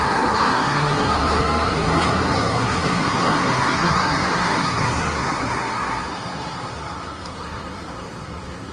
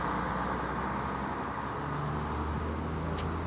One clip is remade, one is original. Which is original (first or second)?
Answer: second